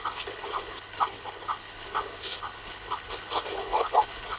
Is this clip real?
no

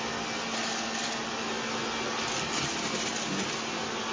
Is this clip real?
yes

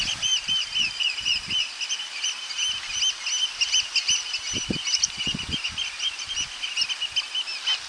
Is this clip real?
yes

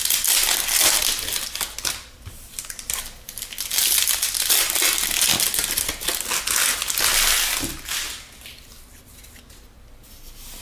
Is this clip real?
yes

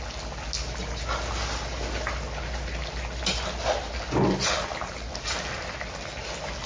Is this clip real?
yes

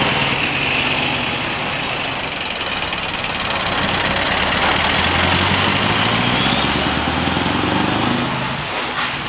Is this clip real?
yes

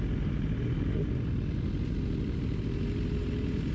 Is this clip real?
yes